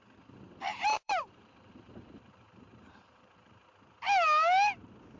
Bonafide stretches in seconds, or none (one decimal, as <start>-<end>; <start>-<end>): 0.0-0.6; 3.7-5.2